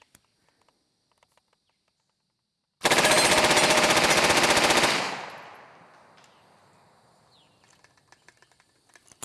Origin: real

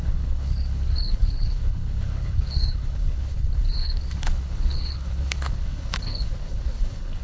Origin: fake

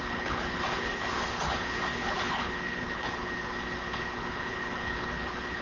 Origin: fake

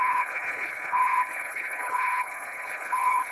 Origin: fake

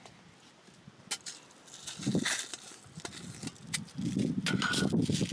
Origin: real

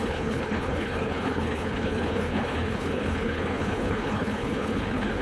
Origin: fake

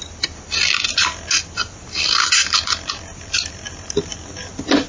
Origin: real